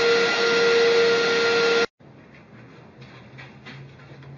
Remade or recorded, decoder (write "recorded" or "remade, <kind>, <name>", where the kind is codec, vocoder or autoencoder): recorded